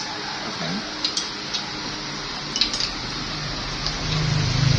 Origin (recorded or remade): recorded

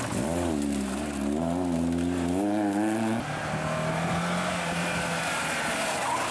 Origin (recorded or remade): recorded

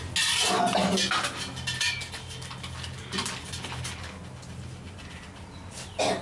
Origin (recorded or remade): recorded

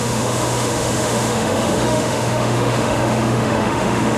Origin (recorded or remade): remade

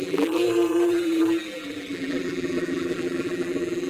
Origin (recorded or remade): remade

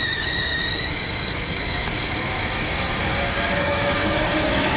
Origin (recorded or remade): remade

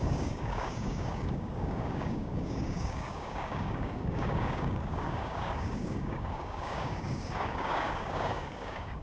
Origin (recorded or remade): remade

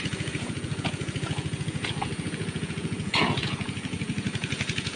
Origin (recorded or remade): remade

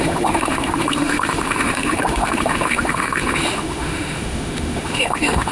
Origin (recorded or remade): remade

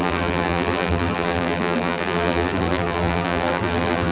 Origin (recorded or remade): remade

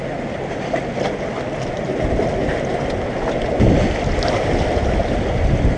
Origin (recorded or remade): recorded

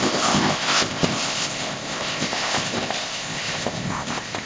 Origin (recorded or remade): remade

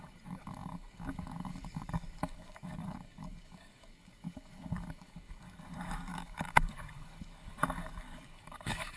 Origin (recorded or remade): remade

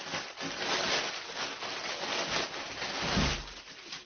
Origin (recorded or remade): recorded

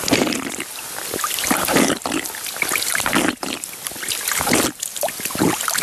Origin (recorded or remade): recorded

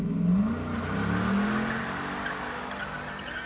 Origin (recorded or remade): recorded